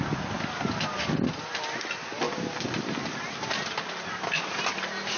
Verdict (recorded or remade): recorded